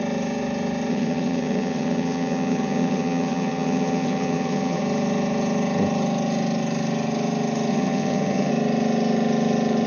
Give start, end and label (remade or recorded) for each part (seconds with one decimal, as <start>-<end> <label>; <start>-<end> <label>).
0.0-0.9 recorded; 0.9-4.8 remade; 4.8-7.7 recorded; 7.7-8.5 remade; 8.5-9.9 recorded